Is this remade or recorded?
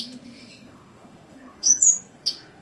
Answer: remade